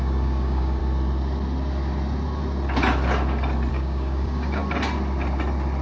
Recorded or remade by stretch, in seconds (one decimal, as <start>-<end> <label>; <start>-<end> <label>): 0.0-0.8 remade; 0.8-3.7 recorded; 3.7-4.6 remade; 4.6-5.8 recorded